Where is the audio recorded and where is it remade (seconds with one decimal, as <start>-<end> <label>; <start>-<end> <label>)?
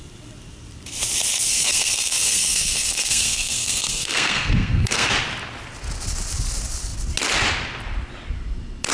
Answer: 0.0-1.5 recorded; 1.5-5.1 remade; 5.1-8.9 recorded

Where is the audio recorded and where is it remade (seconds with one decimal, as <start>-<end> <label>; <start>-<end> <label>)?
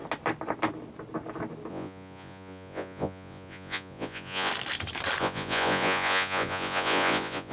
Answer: 0.0-1.7 recorded; 1.7-4.5 remade; 4.5-5.2 recorded; 5.2-7.5 remade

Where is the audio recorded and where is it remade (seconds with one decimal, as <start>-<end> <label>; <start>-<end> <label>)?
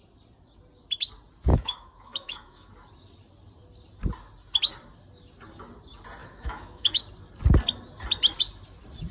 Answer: 0.0-1.5 recorded; 1.5-2.7 remade; 2.7-6.2 recorded; 6.2-7.0 remade; 7.0-9.1 recorded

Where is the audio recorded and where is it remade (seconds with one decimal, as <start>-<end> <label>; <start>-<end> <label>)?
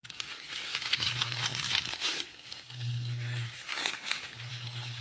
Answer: 0.0-5.0 remade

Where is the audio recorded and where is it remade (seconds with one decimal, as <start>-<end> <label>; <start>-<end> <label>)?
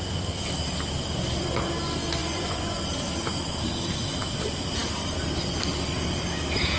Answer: 0.0-2.2 recorded; 2.2-2.8 remade; 2.8-6.8 recorded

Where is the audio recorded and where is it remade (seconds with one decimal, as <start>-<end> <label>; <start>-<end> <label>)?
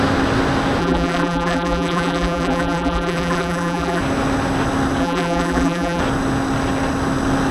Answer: 0.0-0.8 recorded; 0.8-4.0 remade; 4.0-5.0 recorded; 5.0-6.0 remade; 6.0-7.5 recorded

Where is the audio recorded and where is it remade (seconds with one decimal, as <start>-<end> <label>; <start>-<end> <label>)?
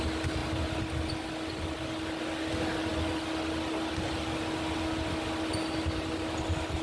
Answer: 0.0-6.8 recorded